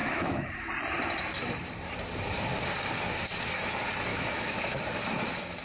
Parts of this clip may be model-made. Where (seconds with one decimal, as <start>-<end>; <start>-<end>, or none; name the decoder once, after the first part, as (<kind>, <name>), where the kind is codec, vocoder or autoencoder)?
0.0-0.7 (autoencoder, DAC-VAE); 4.1-4.8

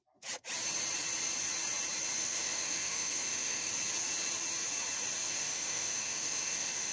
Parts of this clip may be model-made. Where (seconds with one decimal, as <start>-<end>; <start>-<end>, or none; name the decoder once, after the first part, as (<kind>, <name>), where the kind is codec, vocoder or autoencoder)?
2.2-3.7 (autoencoder, DAC-VAE); 5.2-6.9

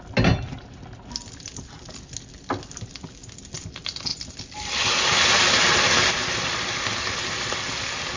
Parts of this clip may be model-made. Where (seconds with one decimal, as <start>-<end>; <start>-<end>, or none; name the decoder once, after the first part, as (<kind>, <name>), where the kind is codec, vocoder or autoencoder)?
none